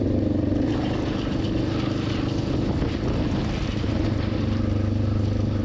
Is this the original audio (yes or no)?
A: yes